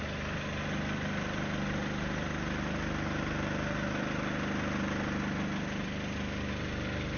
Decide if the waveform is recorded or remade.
recorded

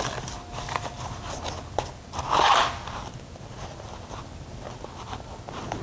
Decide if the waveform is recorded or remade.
recorded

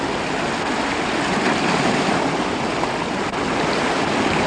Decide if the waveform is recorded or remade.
recorded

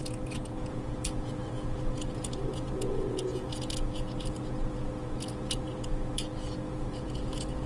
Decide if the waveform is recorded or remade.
remade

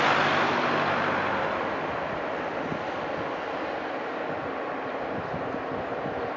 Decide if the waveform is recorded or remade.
recorded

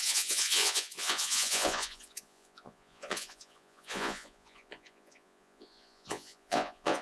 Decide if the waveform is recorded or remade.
remade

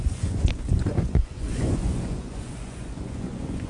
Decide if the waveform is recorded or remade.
remade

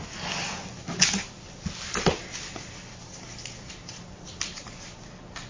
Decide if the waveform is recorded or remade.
recorded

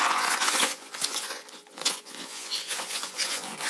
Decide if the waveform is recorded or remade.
remade